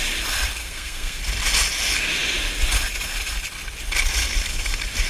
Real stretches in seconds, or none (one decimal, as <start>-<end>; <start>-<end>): 0.0-0.6; 1.2-5.1